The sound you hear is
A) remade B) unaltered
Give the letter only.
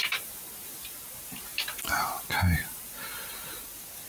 A